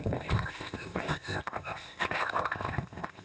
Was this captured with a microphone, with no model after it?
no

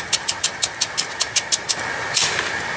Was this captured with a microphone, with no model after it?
yes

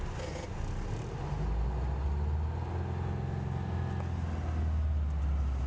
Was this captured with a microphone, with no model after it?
yes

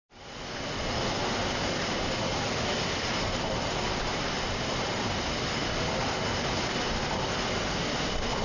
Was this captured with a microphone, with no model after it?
yes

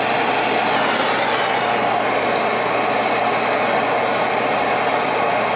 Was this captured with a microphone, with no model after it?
yes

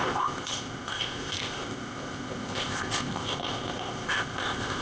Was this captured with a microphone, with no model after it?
no